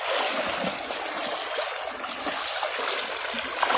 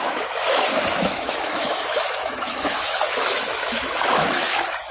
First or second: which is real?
first